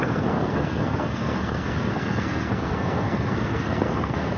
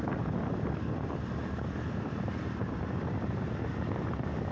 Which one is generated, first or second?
first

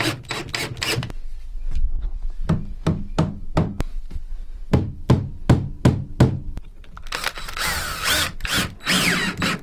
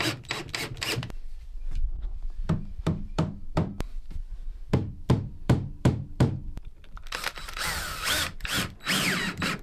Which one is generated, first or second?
second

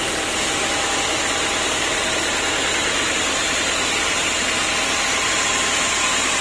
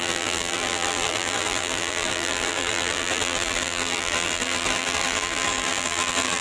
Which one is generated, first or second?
second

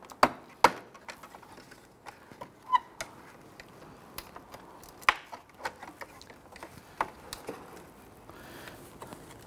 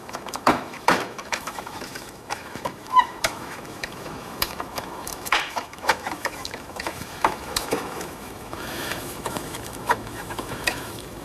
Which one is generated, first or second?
second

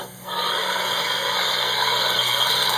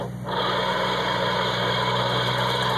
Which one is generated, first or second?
first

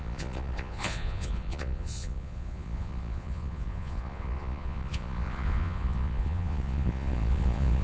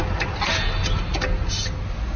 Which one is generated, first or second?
first